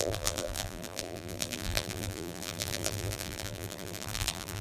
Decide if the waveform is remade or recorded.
remade